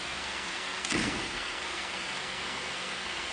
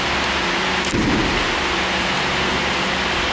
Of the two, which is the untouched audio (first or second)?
second